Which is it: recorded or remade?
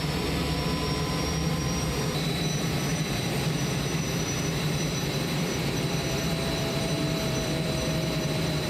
remade